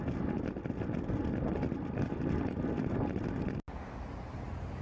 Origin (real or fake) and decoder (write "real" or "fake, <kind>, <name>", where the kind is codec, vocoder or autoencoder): real